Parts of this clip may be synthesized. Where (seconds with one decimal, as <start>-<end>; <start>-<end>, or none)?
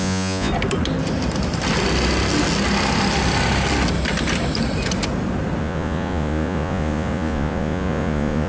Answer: 0.0-0.5; 5.6-8.5